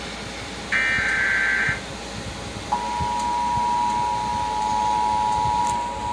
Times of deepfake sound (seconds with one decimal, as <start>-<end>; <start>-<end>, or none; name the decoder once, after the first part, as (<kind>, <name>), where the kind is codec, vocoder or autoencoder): none